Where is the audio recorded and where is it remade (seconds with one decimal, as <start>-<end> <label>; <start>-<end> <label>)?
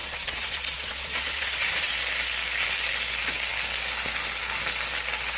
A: 0.0-1.9 remade; 1.9-5.4 recorded